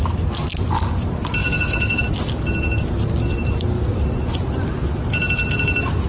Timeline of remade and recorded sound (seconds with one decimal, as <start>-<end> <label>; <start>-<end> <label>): 0.0-1.4 recorded; 1.4-2.0 remade; 2.0-6.1 recorded